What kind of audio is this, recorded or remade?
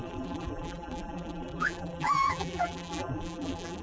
remade